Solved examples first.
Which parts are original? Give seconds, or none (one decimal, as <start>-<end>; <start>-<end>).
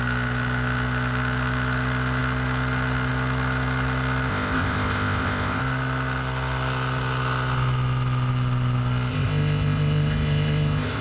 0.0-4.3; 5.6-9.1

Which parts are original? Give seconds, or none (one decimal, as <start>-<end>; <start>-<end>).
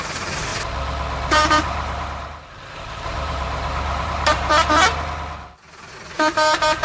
0.5-1.3; 4.5-6.0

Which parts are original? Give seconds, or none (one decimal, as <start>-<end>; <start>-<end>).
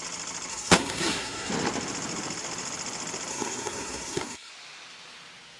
0.0-0.5; 1.5-3.3; 4.5-5.6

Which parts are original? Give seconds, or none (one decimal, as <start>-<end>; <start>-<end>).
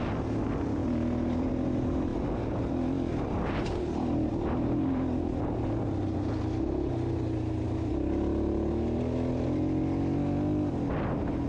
0.0-11.5